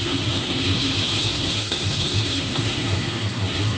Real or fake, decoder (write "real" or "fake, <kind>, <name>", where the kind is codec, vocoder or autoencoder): fake, codec, SNAC